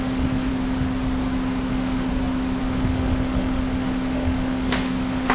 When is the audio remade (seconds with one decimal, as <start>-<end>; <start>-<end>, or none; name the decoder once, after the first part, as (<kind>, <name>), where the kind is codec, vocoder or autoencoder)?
0.0-0.5 (autoencoder, DAC-VAE); 1.7-2.1; 2.6-5.3